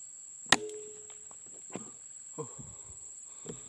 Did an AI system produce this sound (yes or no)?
no